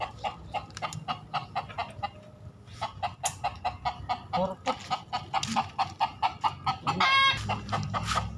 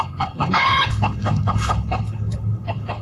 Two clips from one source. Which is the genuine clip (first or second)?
first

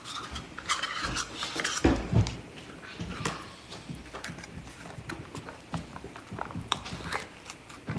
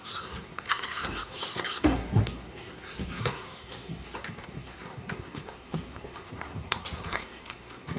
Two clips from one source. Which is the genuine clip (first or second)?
first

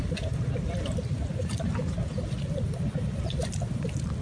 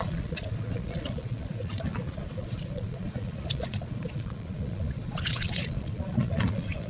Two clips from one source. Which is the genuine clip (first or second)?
first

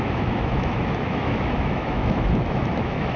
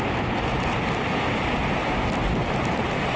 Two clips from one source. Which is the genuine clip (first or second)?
second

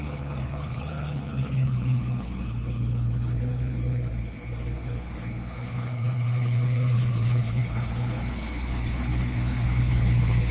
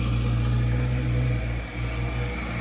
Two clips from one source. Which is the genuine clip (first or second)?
second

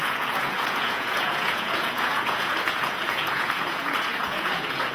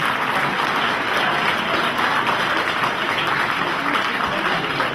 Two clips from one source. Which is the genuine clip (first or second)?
second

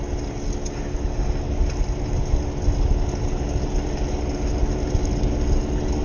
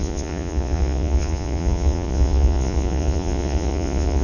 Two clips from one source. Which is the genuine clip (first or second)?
first